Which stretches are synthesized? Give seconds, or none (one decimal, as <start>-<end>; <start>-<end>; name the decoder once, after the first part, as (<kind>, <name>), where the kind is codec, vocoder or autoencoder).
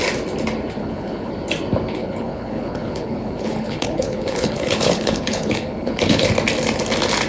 0.8-1.3 (codec, HILCodec); 2.0-6.3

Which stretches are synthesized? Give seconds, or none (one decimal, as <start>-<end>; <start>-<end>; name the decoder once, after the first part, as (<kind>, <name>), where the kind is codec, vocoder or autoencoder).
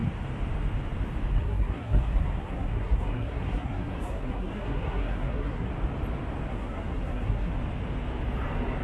1.3-5.7 (codec, SNAC); 6.5-7.5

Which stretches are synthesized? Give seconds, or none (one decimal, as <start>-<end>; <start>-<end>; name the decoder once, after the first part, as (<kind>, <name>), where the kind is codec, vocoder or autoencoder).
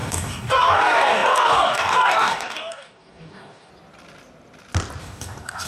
0.0-3.7 (codec, DAC); 5.0-5.7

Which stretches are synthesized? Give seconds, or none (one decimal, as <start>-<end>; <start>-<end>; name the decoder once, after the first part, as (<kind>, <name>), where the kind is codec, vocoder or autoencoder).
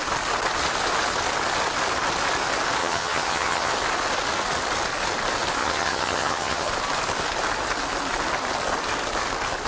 2.8-3.7 (vocoder, HiFi-GAN); 5.6-6.7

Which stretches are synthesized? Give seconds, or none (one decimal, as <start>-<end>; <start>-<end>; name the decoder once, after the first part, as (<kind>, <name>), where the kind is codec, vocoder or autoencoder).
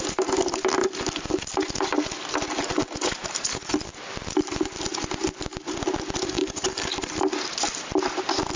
3.2-8.6 (vocoder, BigVGAN v2)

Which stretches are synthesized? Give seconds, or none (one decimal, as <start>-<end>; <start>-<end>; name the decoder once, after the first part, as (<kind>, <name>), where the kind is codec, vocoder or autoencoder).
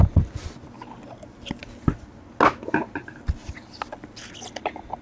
none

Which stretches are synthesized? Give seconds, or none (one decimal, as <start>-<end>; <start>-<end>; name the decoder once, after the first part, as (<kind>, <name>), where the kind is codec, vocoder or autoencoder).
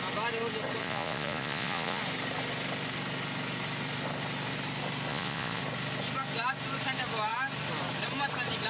0.8-2.0 (vocoder, Vocos); 5.1-5.6